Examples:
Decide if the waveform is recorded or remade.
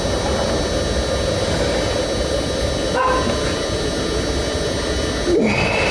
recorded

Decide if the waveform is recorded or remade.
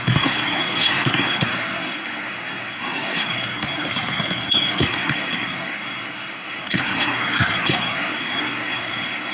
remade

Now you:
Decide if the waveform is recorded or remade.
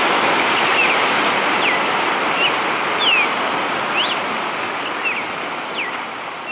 recorded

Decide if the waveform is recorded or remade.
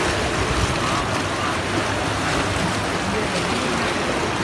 recorded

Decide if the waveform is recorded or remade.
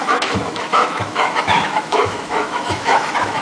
remade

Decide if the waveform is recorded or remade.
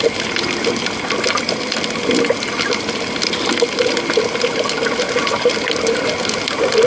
recorded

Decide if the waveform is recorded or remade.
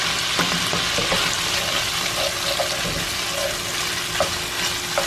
recorded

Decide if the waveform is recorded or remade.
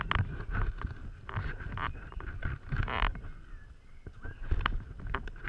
recorded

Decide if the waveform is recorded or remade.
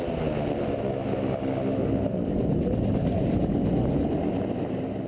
recorded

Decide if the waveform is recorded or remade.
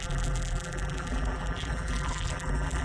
remade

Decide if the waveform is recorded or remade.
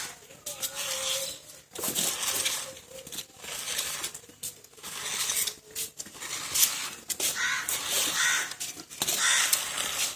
recorded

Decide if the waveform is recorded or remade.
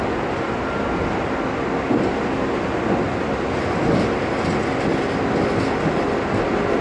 recorded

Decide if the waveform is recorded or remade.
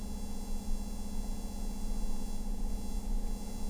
recorded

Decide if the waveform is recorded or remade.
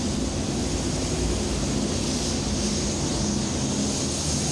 recorded